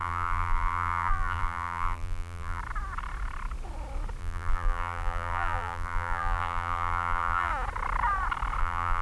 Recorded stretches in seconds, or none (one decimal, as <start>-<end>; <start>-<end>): 2.6-4.2; 7.5-8.6